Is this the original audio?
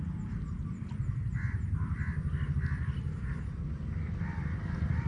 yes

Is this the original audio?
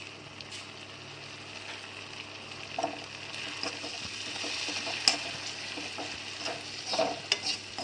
yes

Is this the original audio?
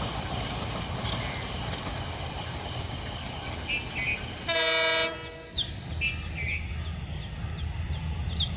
yes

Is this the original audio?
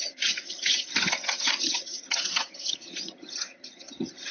no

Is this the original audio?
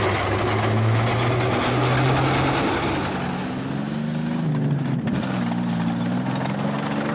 yes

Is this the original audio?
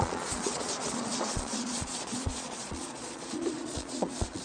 no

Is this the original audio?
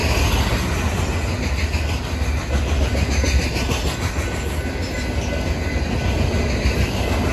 yes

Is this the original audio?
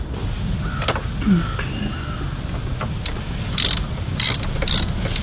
yes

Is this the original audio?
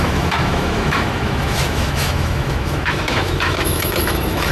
no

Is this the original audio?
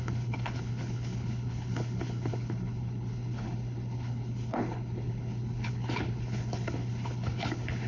no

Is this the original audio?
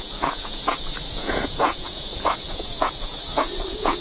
no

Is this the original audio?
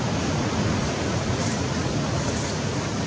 no